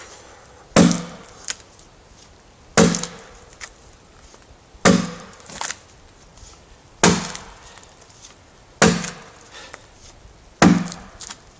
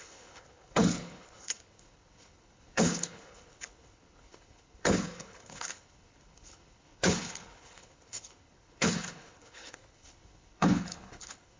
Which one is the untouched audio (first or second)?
first